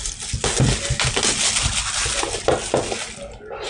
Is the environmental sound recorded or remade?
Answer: recorded